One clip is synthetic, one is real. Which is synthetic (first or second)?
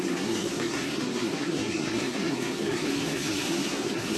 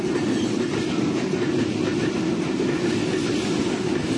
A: first